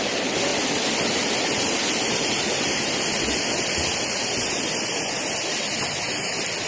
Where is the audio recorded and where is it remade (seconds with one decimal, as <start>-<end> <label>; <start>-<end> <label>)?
0.0-6.7 recorded